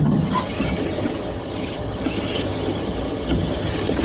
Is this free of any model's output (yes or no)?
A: no